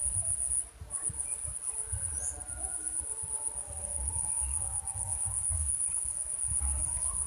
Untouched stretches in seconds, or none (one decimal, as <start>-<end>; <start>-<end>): 0.0-3.6